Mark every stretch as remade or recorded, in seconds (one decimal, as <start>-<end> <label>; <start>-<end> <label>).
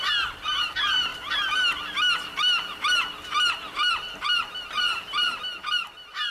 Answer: 0.0-6.3 recorded